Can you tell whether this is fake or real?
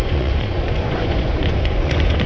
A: fake